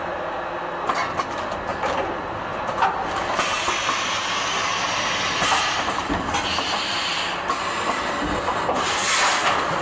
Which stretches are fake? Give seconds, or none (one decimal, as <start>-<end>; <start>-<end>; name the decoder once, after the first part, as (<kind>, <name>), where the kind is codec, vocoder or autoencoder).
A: 7.1-8.1 (vocoder, BigVGAN v2)

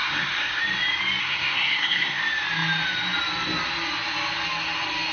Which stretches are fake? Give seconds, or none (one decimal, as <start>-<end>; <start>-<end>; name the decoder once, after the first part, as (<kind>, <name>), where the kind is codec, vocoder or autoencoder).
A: 0.0-0.6 (codec, SNAC); 1.2-2.2

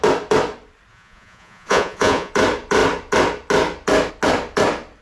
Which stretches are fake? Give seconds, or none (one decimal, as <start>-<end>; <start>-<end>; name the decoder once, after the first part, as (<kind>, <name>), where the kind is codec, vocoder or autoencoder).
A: 0.9-2.3 (vocoder, Vocos)

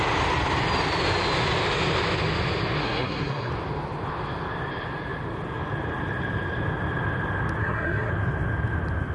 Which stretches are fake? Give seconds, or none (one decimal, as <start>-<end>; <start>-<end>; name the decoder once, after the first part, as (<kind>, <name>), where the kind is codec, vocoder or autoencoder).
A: 2.8-3.5 (codec, SNAC); 7.6-8.1